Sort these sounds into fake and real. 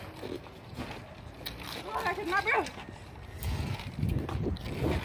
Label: real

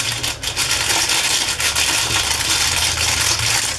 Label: real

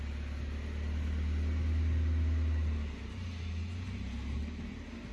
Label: real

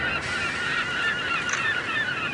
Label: real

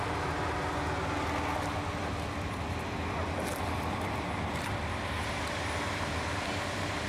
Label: real